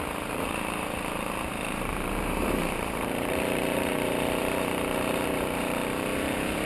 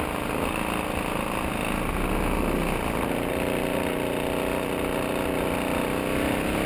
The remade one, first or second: first